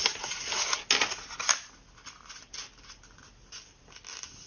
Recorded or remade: recorded